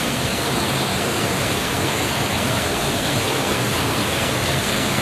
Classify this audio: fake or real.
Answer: fake